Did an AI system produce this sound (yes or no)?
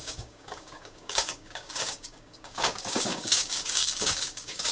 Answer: yes